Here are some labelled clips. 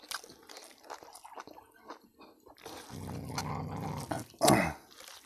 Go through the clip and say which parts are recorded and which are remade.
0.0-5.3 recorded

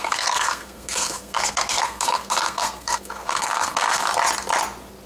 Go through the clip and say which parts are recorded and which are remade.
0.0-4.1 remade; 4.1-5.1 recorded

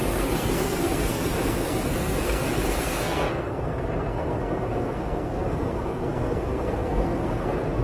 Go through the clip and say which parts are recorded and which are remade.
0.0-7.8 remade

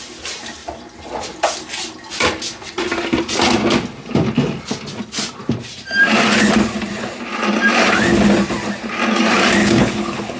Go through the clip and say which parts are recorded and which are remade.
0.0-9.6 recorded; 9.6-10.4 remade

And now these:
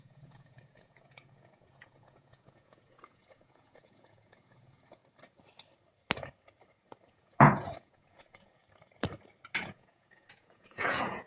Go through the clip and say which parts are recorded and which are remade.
0.0-5.0 remade; 5.0-7.1 recorded; 7.1-8.6 remade; 8.6-9.6 recorded; 9.6-11.3 remade

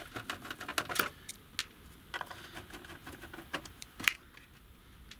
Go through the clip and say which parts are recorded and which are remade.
0.0-3.0 recorded; 3.0-4.8 remade; 4.8-5.2 recorded

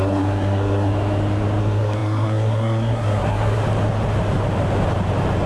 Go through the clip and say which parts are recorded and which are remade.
0.0-0.9 remade; 0.9-1.6 recorded; 1.6-3.6 remade; 3.6-5.5 recorded

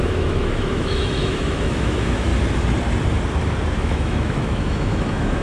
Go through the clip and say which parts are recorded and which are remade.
0.0-2.3 remade; 2.3-3.8 recorded; 3.8-5.4 remade